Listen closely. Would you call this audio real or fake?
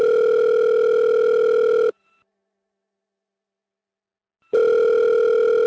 real